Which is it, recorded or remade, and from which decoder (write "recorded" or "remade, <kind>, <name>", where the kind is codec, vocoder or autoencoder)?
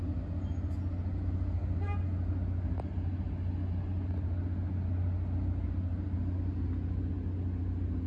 recorded